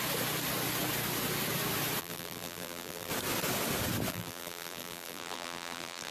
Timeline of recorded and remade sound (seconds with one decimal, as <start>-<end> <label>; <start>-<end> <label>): 0.0-2.0 recorded; 2.0-3.1 remade; 3.1-4.1 recorded; 4.1-6.1 remade